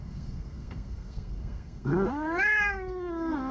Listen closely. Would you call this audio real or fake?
fake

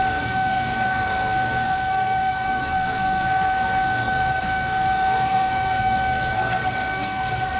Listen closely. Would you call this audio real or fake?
fake